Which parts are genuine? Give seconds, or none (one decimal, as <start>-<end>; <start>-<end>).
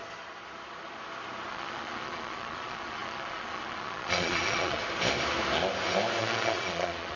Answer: 0.0-1.5; 4.8-6.2